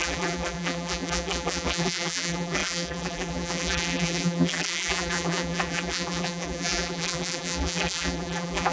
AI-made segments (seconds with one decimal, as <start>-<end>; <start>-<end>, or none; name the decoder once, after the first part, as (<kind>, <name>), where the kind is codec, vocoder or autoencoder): 0.0-8.7 (vocoder, BigVGAN v2)